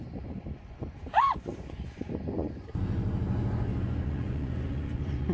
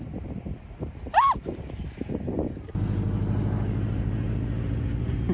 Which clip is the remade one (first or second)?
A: first